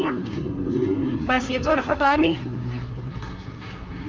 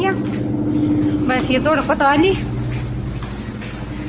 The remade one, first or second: first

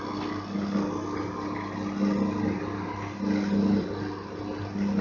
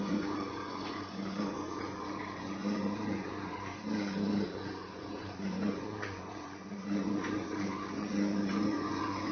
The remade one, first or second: second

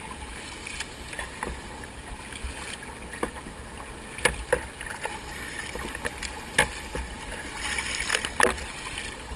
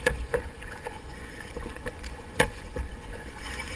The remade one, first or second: second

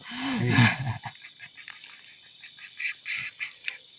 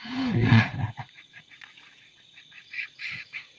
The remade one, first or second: second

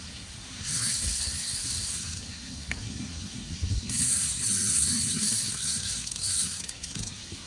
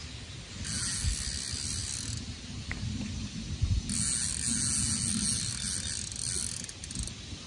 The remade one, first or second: first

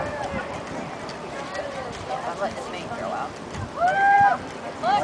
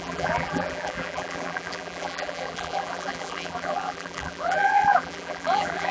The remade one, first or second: second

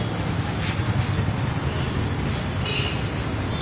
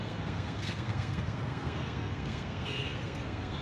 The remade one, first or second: second